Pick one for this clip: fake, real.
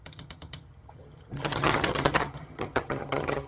fake